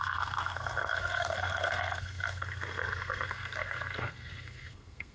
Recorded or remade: remade